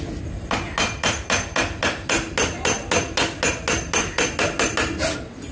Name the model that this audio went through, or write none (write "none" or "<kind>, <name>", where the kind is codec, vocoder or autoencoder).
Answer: none